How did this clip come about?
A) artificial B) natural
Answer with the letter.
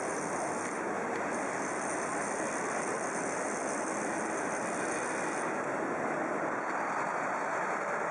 B